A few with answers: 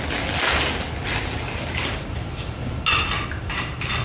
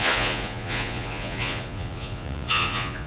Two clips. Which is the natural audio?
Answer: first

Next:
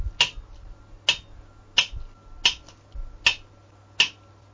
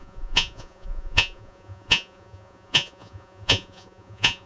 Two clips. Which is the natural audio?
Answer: first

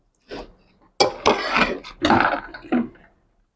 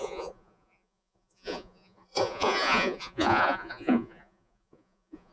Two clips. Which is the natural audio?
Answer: first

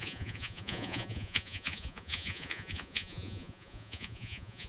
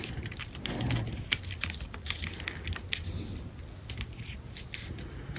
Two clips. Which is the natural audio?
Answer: second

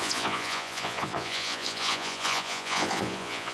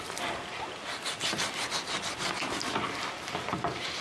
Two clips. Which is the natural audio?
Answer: second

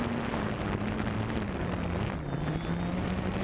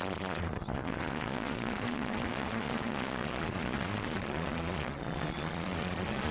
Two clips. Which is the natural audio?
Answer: first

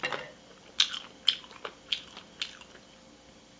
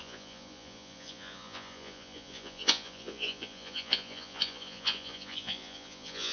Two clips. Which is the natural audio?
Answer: first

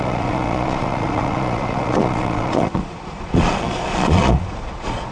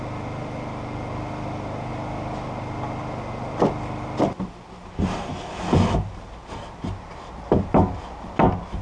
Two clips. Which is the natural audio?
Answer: second